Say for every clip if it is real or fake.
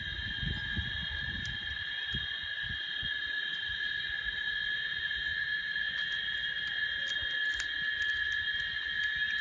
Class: real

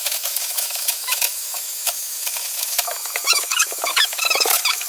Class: fake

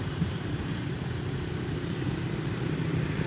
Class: fake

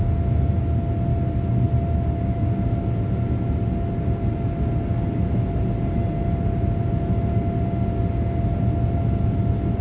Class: real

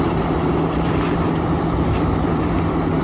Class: fake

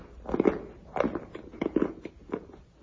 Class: real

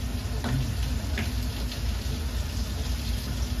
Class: real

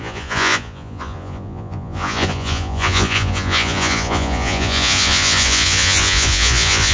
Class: fake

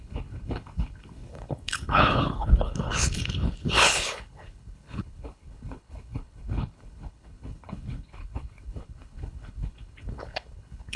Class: fake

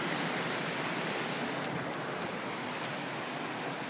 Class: real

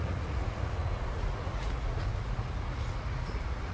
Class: fake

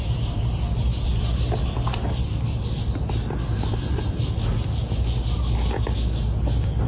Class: real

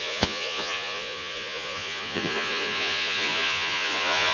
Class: fake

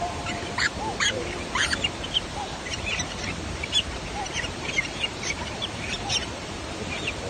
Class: fake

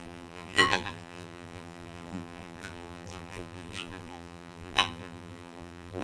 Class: fake